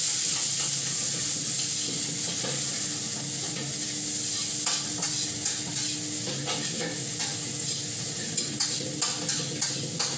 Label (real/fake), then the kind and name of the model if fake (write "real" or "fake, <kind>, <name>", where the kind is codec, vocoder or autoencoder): real